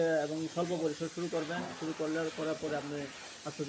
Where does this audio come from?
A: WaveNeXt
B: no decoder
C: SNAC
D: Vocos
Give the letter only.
B